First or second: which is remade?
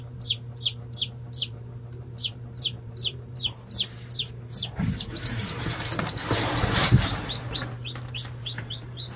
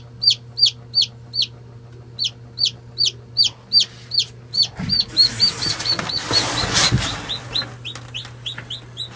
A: first